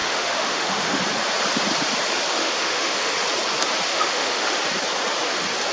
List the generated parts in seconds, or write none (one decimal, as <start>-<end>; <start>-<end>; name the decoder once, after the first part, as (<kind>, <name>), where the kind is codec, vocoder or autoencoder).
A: 0.0-1.0 (autoencoder, DAC-VAE); 2.4-3.1; 3.9-4.6